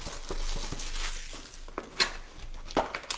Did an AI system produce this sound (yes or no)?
no